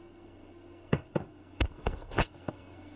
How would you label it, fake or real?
fake